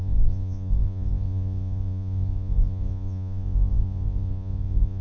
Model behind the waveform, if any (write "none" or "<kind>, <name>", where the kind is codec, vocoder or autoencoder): vocoder, Vocos